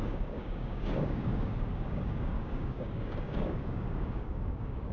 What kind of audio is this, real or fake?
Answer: fake